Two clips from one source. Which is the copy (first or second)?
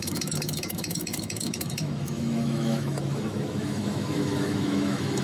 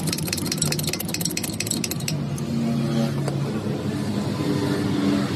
first